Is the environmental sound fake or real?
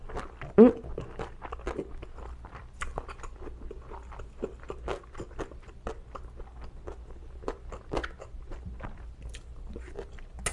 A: real